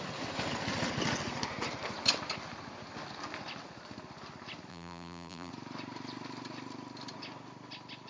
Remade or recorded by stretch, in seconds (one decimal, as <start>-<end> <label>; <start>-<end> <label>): 0.0-4.7 recorded; 4.7-5.5 remade; 5.5-8.1 recorded